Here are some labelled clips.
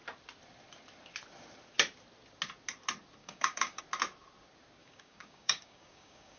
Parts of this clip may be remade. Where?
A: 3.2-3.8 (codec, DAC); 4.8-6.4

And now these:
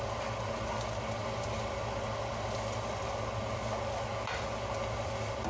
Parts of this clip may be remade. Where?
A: none

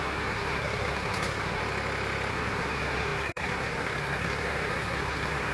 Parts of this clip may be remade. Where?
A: 0.0-1.6 (codec, SNAC); 2.3-5.5